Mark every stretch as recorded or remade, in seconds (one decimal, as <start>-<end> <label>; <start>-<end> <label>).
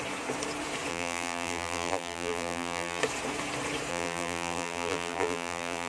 0.0-0.9 recorded; 0.9-3.0 remade; 3.0-3.9 recorded; 3.9-5.9 remade